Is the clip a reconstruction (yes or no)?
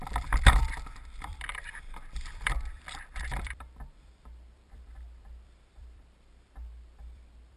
yes